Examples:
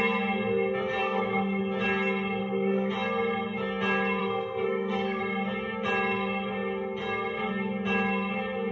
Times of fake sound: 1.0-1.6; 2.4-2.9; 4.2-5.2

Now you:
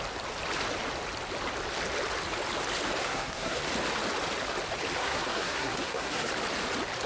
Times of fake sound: 3.0-3.6; 5.0-6.3